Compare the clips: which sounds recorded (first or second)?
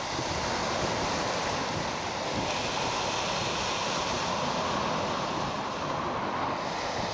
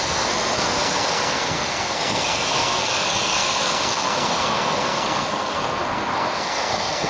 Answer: first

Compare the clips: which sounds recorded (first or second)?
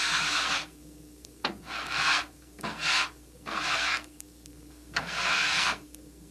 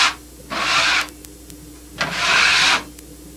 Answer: second